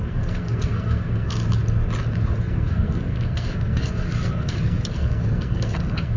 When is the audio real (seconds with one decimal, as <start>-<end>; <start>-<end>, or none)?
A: 1.4-2.4